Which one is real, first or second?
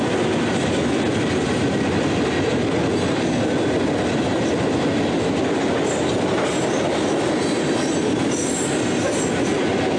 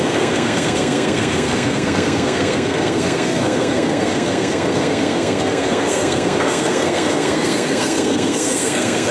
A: first